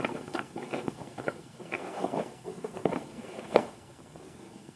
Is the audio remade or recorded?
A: remade